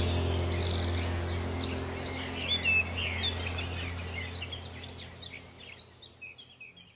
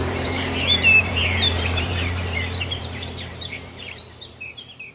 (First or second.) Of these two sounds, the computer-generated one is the second